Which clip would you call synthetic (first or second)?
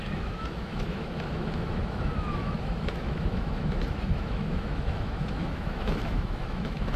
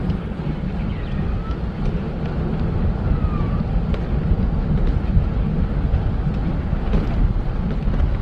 first